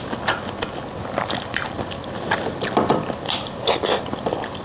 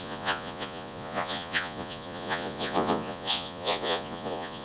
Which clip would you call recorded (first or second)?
first